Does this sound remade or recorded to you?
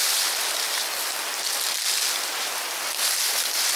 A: recorded